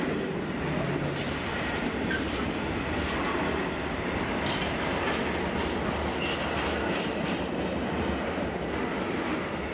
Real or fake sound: real